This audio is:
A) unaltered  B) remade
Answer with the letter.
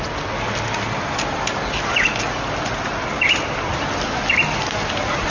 A